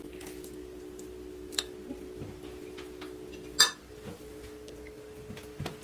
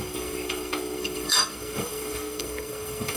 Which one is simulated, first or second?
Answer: second